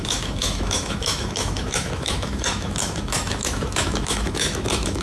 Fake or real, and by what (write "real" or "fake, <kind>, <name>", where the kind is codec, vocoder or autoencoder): fake, autoencoder, DAC-VAE